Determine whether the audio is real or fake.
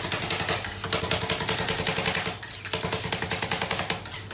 real